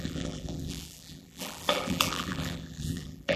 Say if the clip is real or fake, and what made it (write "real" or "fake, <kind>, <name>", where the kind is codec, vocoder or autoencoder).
fake, vocoder, BigVGAN v2